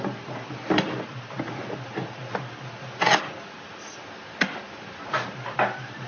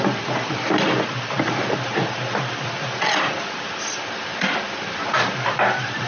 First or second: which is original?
first